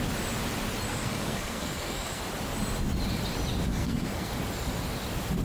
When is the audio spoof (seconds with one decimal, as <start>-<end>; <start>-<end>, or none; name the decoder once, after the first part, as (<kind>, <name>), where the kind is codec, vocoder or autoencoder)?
0.9-2.2 (codec, SNAC); 3.7-4.3